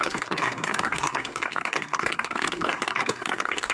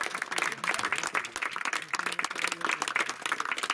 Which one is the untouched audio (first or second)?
second